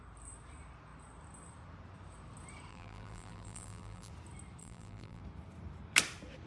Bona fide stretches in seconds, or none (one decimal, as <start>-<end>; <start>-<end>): 0.0-2.7; 4.1-4.6; 5.2-6.5

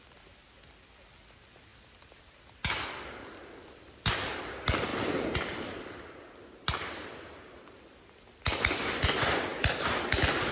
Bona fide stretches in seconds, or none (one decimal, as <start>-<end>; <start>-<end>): 0.0-4.9; 7.6-9.5; 10.0-10.5

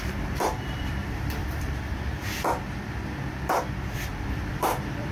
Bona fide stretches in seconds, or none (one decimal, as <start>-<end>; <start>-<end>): 1.4-4.5

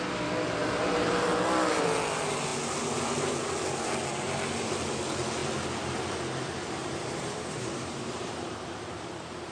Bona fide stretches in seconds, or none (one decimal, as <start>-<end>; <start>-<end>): 0.0-0.6; 1.2-6.8

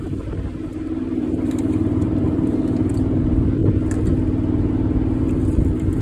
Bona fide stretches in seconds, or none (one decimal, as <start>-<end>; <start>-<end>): 3.6-5.6